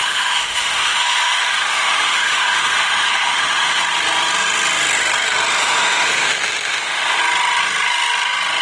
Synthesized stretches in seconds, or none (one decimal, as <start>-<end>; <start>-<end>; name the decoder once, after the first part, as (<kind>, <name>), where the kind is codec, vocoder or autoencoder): 0.0-3.8 (autoencoder, DAC-VAE); 5.6-7.2